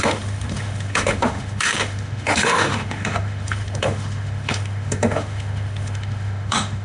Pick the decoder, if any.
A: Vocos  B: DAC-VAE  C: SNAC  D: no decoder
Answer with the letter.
B